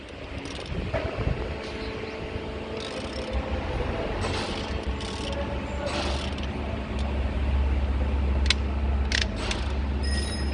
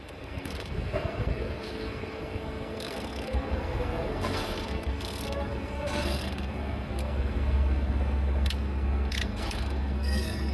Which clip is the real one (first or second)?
first